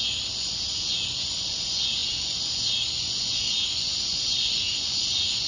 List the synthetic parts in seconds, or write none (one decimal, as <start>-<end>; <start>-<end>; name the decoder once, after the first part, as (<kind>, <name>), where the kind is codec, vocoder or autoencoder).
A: 0.0-5.5 (vocoder, Vocos)